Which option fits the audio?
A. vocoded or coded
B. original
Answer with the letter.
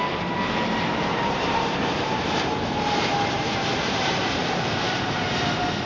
A